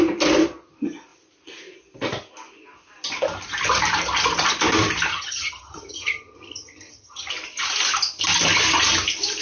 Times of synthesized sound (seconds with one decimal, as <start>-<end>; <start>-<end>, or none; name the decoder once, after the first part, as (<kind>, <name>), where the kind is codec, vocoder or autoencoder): 5.1-7.3 (vocoder, HiFi-GAN)